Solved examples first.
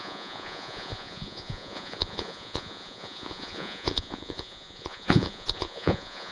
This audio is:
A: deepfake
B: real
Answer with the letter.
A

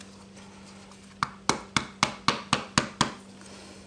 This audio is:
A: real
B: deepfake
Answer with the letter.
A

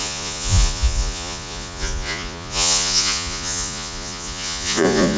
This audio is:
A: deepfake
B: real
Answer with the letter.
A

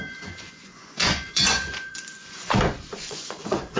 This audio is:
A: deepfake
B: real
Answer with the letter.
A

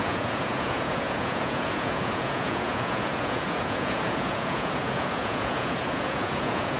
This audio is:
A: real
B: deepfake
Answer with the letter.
B